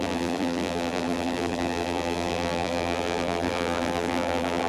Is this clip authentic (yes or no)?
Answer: no